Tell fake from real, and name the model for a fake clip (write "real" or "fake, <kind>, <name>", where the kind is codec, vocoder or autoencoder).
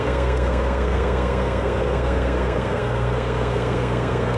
fake, codec, SNAC